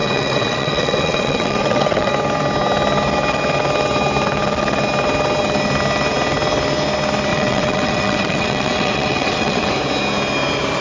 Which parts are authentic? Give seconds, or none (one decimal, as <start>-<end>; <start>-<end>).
2.1-7.3; 9.7-10.8

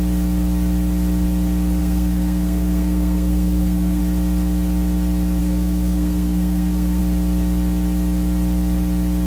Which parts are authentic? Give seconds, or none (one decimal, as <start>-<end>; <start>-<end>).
0.0-1.8; 4.0-5.4; 7.0-9.3

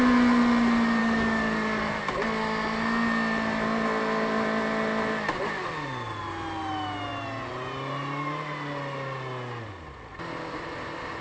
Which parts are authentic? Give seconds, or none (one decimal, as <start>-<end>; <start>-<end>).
0.0-1.0; 1.9-11.2

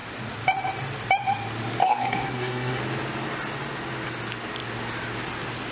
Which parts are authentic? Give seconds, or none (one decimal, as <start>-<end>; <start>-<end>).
0.0-1.8; 2.8-5.7

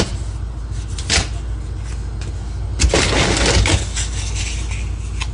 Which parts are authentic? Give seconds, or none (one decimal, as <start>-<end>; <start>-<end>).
0.0-5.3